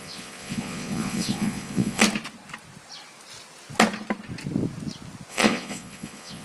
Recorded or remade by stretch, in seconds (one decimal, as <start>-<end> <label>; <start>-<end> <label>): 0.0-2.0 remade; 2.0-5.3 recorded; 5.3-6.4 remade